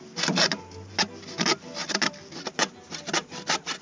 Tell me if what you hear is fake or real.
real